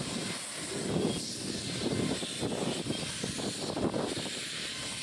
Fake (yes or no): no